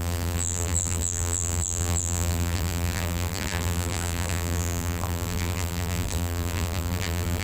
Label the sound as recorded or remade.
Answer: remade